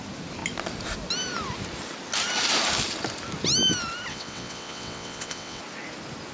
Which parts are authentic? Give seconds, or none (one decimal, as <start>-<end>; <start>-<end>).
0.0-4.1; 5.6-6.3